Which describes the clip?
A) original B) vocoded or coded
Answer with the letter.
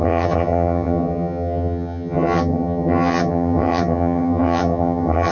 B